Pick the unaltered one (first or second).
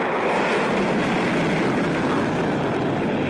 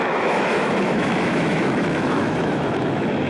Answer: first